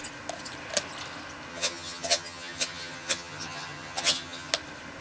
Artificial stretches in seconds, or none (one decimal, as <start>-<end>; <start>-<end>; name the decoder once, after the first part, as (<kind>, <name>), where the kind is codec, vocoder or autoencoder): 1.5-4.5 (vocoder, HiFi-GAN)